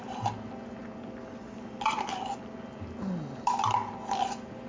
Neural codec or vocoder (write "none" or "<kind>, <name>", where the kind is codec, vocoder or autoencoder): none